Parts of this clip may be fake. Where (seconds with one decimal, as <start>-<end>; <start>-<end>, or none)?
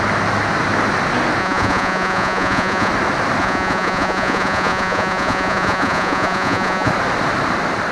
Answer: 1.4-2.9; 3.4-6.9